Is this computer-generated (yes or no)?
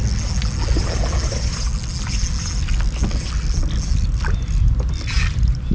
no